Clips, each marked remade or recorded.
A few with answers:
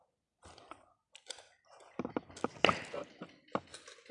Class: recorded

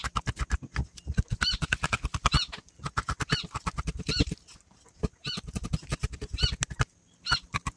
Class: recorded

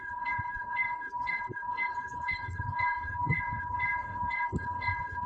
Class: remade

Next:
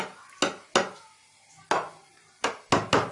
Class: recorded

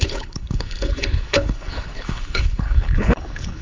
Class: remade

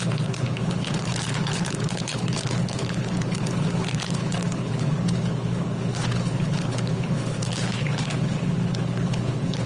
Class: remade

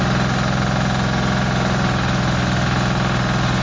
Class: recorded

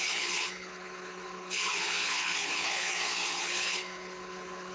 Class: remade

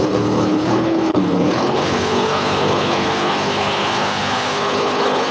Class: remade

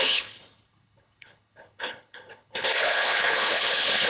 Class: remade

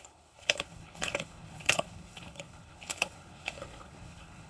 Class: remade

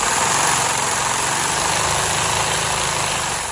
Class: recorded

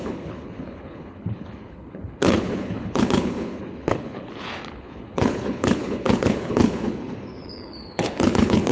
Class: remade